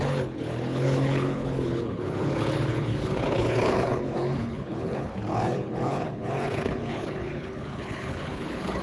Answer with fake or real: fake